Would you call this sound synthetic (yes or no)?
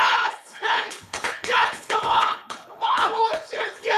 yes